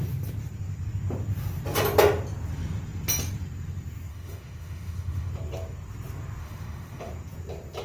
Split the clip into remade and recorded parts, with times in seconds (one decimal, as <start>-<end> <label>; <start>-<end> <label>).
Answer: 0.0-4.1 recorded; 4.1-5.3 remade; 5.3-6.4 recorded; 6.4-7.1 remade; 7.1-7.8 recorded